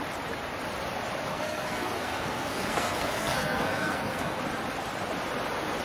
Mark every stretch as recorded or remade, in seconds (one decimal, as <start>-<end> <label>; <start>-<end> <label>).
0.0-1.3 recorded; 1.3-4.4 remade; 4.4-5.8 recorded